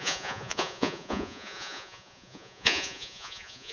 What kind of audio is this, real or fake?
fake